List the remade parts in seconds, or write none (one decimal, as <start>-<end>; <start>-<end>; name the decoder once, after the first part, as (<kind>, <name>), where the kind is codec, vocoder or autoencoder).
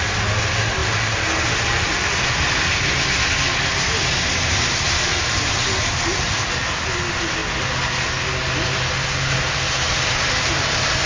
none